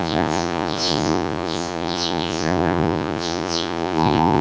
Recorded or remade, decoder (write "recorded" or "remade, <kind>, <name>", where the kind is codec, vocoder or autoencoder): remade, vocoder, Vocos